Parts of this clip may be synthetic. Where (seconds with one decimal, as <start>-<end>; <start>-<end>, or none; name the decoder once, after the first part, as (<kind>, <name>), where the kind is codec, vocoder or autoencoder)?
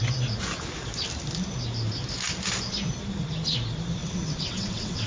4.0-5.1 (vocoder, WaveNeXt)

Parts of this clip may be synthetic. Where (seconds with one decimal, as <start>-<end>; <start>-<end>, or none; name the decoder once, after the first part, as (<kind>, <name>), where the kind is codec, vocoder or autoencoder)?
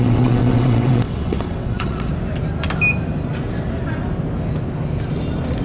0.0-2.1 (vocoder, WaveNeXt)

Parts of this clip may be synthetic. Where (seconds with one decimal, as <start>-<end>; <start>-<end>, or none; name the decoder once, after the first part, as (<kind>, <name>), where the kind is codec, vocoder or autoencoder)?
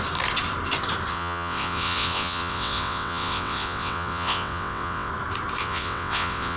1.1-5.1 (vocoder, WaveNeXt); 5.6-6.6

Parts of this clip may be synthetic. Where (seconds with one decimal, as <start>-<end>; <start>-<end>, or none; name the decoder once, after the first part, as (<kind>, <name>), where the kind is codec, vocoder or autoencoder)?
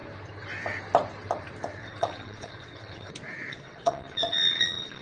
1.8-3.1 (vocoder, WaveNeXt); 3.5-5.0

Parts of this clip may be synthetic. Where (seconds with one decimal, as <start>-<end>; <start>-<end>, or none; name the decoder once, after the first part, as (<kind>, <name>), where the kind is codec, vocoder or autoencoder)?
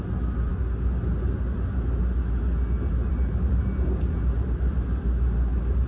none